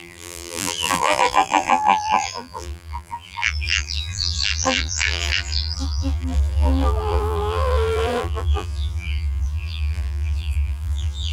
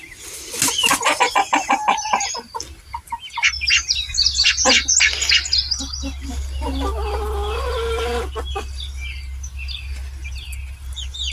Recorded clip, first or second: second